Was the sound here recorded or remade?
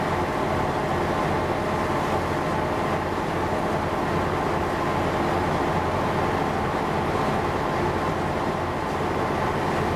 recorded